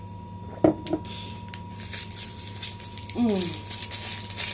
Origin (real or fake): real